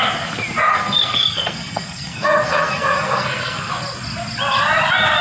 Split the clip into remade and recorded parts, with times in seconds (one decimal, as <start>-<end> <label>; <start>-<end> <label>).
0.0-0.7 recorded; 0.7-3.7 remade; 3.7-5.2 recorded